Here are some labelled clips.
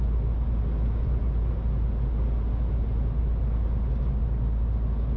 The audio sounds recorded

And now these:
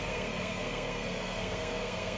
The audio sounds remade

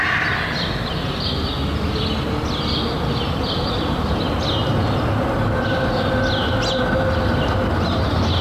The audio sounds recorded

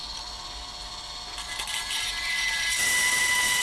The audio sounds recorded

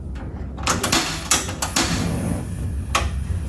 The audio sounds recorded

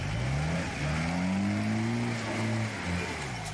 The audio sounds recorded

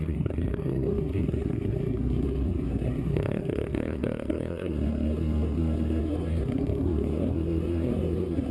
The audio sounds remade